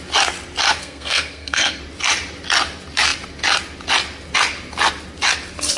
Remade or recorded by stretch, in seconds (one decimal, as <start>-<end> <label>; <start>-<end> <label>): 0.0-0.8 recorded; 0.8-1.8 remade; 1.8-5.8 recorded